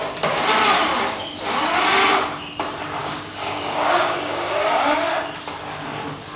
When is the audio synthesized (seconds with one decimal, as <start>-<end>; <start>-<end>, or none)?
3.0-4.5